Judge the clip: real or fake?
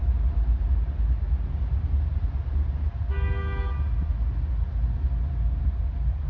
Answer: real